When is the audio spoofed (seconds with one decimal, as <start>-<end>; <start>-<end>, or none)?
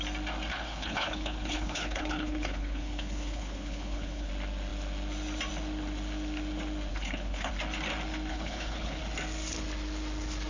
0.5-4.3; 6.9-7.5; 8.3-9.0